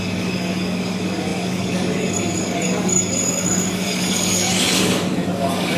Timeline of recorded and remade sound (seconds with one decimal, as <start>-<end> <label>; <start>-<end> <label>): 0.0-5.8 remade